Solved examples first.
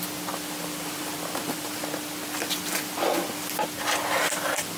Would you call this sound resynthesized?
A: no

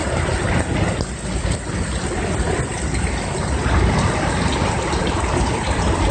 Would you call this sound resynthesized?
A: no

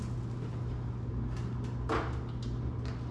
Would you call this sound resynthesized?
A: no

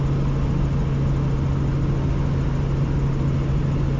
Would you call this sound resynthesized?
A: no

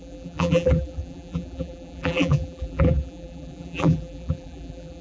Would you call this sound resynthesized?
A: yes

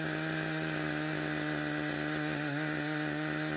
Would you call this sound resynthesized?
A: no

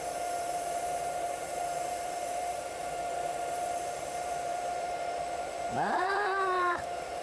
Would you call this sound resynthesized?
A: yes